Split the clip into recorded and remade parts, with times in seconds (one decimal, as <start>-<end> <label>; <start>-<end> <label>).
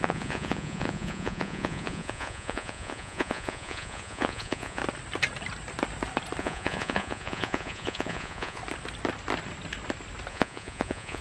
0.0-4.8 remade; 4.8-6.4 recorded; 6.4-8.6 remade; 8.6-10.3 recorded; 10.3-11.2 remade